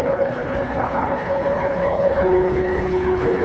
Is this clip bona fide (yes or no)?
no